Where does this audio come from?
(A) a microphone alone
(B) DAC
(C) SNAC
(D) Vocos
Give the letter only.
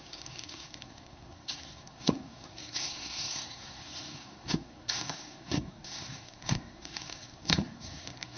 C